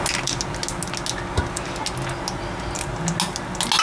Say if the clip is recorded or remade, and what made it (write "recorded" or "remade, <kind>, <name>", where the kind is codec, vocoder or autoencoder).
recorded